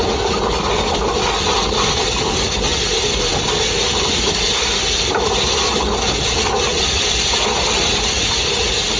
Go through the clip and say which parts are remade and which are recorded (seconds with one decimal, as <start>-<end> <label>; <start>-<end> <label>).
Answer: 0.0-0.6 remade; 0.6-6.7 recorded; 6.7-7.3 remade; 7.3-9.0 recorded

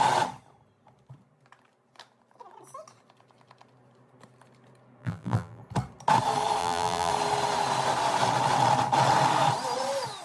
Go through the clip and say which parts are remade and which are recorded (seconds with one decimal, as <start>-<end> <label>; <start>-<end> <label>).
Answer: 0.0-5.0 recorded; 5.0-5.6 remade; 5.6-6.6 recorded; 6.6-7.1 remade; 7.1-10.2 recorded

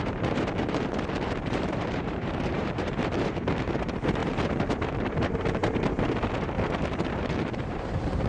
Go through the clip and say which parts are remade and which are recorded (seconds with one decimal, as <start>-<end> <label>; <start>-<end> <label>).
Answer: 0.0-8.3 remade

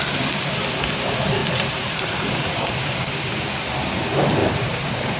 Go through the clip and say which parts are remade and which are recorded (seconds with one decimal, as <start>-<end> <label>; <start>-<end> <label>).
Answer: 0.0-1.4 recorded; 1.4-3.0 remade; 3.0-4.4 recorded; 4.4-5.2 remade

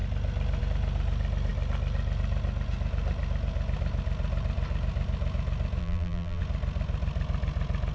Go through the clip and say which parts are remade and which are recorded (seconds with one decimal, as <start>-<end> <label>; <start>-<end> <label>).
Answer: 0.0-5.8 recorded; 5.8-6.4 remade; 6.4-7.9 recorded

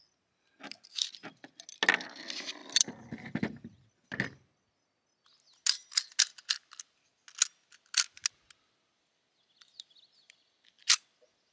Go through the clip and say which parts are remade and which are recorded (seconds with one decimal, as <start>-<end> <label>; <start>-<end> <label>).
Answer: 0.0-2.6 recorded; 2.6-3.9 remade; 3.9-11.5 recorded